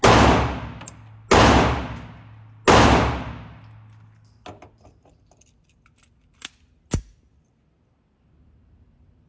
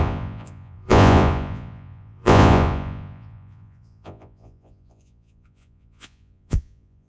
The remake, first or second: second